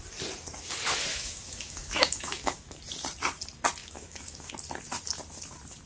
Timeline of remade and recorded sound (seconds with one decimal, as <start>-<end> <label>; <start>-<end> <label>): 0.0-1.1 recorded; 1.1-2.8 remade; 2.8-3.8 recorded; 3.8-4.5 remade; 4.5-5.9 recorded

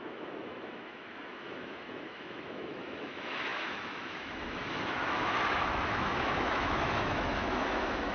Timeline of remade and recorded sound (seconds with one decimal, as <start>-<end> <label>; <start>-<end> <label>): 0.0-8.1 remade

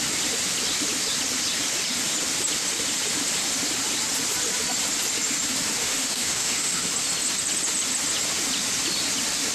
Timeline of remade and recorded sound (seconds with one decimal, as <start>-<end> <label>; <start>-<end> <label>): 0.0-5.8 recorded; 5.8-6.9 remade; 6.9-9.5 recorded

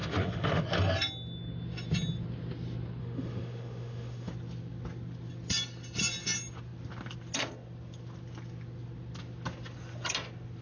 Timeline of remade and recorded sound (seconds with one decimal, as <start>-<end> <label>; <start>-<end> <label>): 0.0-0.6 remade; 0.6-3.0 recorded; 3.0-4.3 remade; 4.3-10.6 recorded